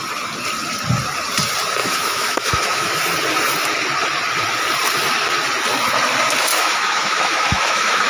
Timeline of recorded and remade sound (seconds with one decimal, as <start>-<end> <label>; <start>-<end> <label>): 0.0-1.8 recorded; 1.8-3.0 remade; 3.0-6.5 recorded; 6.5-8.1 remade